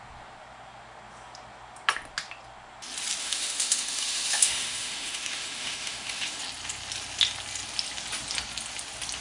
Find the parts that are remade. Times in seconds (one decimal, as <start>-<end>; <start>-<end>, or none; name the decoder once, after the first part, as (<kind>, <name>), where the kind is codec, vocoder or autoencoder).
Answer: 3.2-6.4 (autoencoder, DAC-VAE)